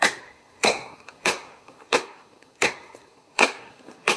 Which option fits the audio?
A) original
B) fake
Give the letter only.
B